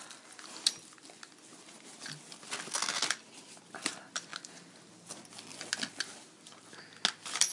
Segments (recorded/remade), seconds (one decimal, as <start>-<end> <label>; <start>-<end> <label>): 0.0-7.5 recorded

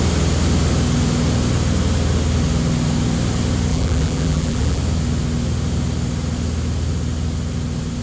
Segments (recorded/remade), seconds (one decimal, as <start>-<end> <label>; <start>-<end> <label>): 0.0-3.7 recorded; 3.7-4.8 remade; 4.8-8.0 recorded

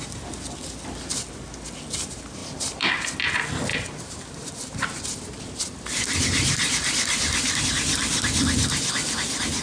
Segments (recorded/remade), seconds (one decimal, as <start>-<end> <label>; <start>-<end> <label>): 0.0-2.4 recorded; 2.4-2.9 remade; 2.9-3.7 recorded; 3.7-7.6 remade; 7.6-9.6 recorded

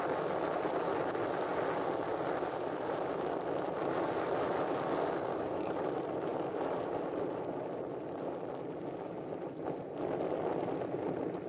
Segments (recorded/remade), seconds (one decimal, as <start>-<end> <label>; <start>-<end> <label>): 0.0-5.3 recorded; 5.3-5.8 remade; 5.8-11.5 recorded

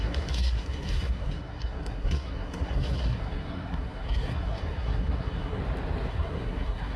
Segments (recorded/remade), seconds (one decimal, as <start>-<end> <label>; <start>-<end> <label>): 0.0-5.6 remade; 5.6-6.1 recorded; 6.1-7.0 remade

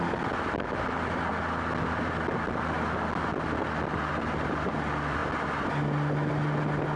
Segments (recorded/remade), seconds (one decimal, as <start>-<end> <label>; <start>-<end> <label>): 0.0-7.0 recorded

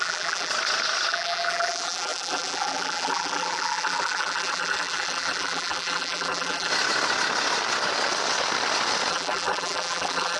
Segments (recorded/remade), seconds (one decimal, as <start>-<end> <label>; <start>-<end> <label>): 0.0-0.5 remade; 0.5-1.1 recorded; 1.1-6.7 remade; 6.7-9.1 recorded; 9.1-10.4 remade

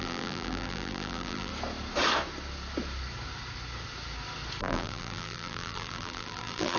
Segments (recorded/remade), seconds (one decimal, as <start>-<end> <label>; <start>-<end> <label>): 0.0-1.5 remade; 1.5-4.6 recorded; 4.6-6.8 remade